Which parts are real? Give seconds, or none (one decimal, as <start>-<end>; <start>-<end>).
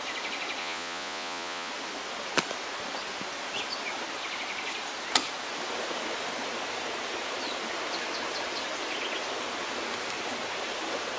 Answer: 0.0-0.6; 1.7-11.2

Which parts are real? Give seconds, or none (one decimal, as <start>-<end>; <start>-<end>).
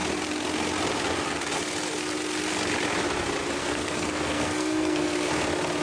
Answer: 0.0-3.6; 5.3-5.8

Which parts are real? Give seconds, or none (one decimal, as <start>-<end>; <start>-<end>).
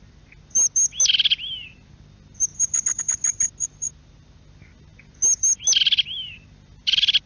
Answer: 0.0-7.3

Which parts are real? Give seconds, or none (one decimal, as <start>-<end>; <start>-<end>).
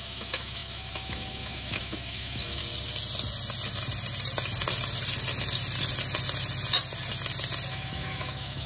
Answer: 2.6-7.7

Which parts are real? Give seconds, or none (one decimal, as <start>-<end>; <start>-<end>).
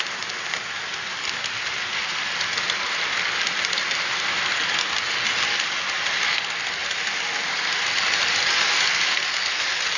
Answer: 0.0-10.0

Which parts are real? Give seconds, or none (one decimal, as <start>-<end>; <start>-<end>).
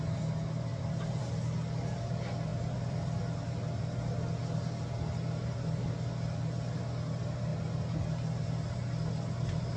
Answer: 0.0-0.7; 2.1-2.5; 3.2-9.8